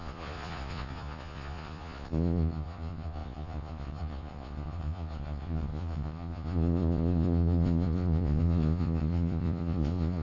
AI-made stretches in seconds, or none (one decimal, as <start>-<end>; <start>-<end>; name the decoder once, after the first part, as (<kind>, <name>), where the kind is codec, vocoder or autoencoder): 0.0-10.2 (vocoder, Vocos)